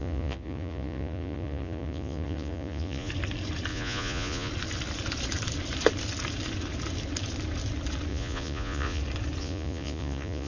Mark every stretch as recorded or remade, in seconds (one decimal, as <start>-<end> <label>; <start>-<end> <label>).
0.0-3.1 remade; 3.1-3.7 recorded; 3.7-4.5 remade; 4.5-8.1 recorded; 8.1-9.0 remade; 9.0-9.4 recorded; 9.4-10.5 remade

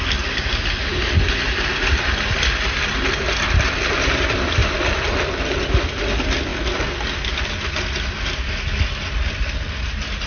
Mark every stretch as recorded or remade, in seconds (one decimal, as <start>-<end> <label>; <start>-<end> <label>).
0.0-10.3 recorded

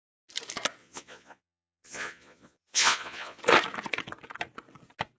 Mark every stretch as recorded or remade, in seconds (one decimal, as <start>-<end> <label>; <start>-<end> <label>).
0.0-0.8 recorded; 0.8-3.4 remade; 3.4-5.2 recorded